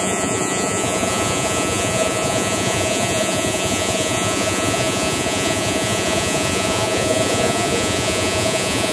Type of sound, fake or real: fake